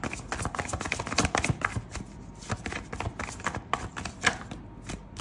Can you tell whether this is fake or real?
real